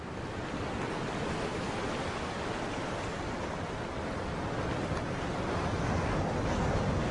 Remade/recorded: recorded